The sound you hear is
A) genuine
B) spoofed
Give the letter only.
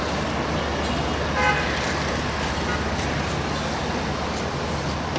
A